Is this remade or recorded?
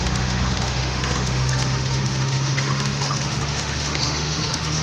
remade